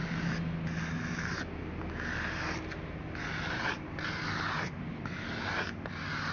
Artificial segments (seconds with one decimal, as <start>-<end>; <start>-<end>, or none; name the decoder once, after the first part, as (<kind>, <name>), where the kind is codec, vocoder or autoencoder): none